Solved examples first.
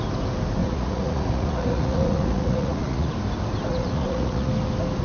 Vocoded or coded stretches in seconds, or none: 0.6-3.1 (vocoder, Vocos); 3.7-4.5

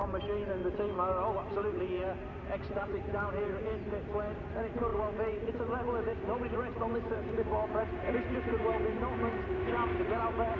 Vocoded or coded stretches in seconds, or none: none

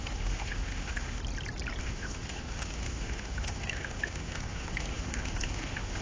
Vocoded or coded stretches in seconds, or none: 0.0-1.2 (autoencoder, DAC-VAE); 1.8-6.0

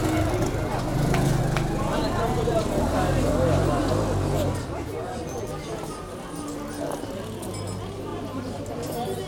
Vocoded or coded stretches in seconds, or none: 0.9-1.4 (vocoder, BigVGAN v2); 1.9-3.3

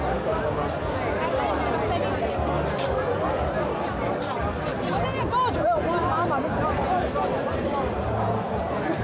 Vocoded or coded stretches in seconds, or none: 4.7-9.0 (vocoder, BigVGAN v2)

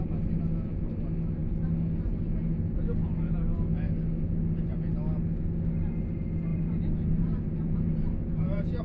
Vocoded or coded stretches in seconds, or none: 6.5-8.8 (vocoder, Vocos)